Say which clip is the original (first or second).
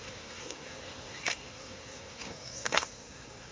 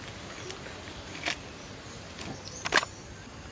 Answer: second